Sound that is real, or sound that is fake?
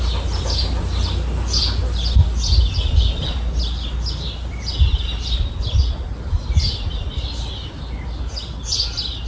real